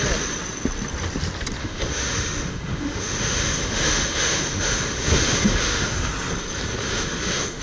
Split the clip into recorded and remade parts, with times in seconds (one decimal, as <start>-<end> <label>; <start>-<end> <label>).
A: 0.0-1.6 recorded; 1.6-6.1 remade; 6.1-6.8 recorded; 6.8-7.6 remade